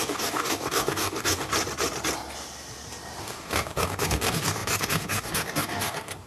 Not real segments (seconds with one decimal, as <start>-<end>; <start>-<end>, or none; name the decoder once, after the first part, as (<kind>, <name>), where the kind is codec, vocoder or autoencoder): 0.0-1.5 (codec, DAC); 3.2-6.3